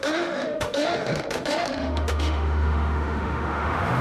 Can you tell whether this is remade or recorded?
remade